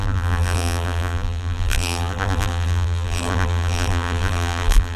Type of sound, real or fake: fake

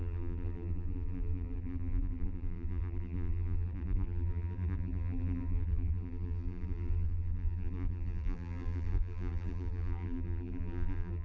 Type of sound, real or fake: fake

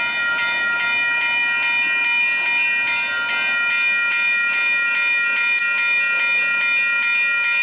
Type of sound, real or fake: real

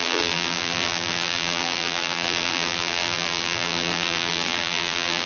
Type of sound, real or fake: fake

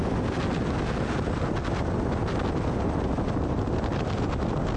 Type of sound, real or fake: real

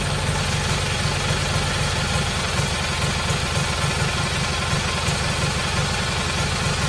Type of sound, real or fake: real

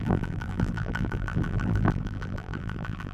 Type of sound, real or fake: fake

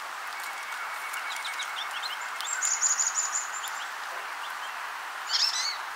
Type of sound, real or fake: real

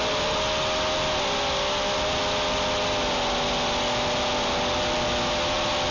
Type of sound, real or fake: real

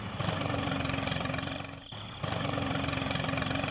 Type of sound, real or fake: fake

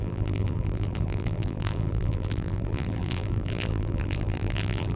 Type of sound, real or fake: fake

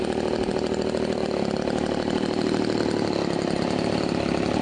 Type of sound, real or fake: real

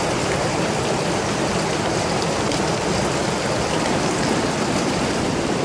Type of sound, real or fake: fake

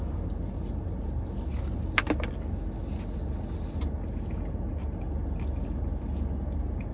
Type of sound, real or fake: real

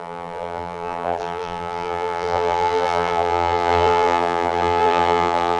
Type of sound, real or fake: fake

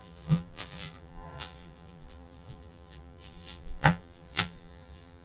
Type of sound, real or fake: fake